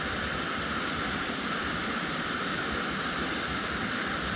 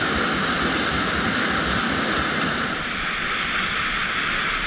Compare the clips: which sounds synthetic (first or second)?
first